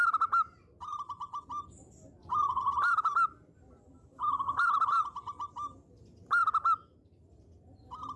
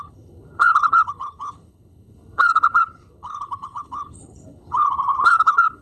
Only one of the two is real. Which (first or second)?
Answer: first